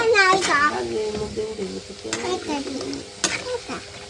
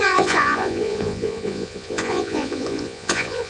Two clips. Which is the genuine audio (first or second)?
first